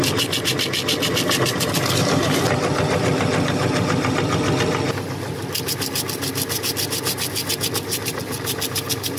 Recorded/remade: recorded